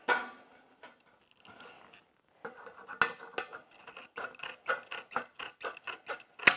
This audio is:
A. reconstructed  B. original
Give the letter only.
B